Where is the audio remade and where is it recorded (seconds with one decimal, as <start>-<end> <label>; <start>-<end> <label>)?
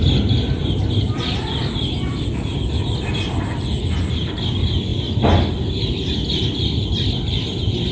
0.0-7.9 recorded